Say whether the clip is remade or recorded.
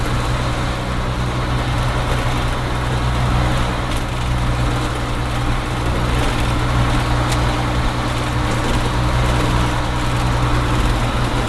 recorded